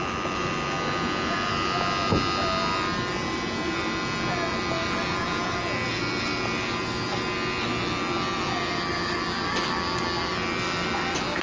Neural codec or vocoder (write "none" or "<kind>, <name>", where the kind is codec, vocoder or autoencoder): none